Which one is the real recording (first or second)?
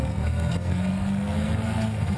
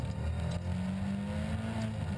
second